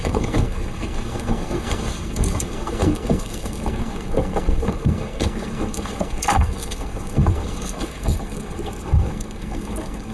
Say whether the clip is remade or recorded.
remade